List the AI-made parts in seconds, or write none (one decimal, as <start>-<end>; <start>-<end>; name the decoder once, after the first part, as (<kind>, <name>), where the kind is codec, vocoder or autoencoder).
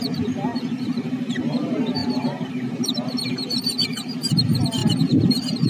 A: none